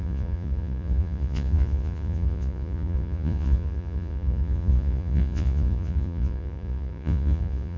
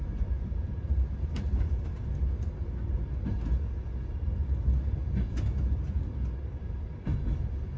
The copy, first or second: first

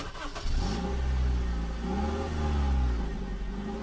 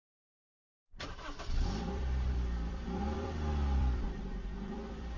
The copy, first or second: second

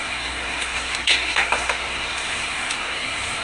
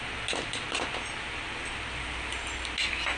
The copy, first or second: first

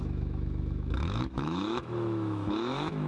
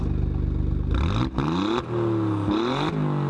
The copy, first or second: first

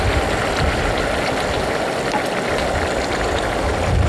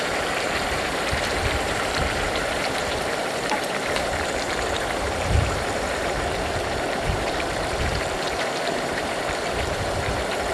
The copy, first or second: second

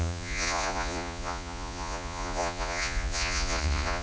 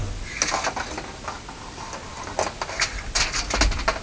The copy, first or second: first